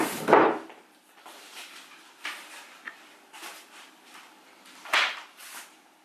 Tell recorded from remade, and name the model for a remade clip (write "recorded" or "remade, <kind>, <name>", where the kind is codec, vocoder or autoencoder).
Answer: remade, vocoder, BigVGAN v2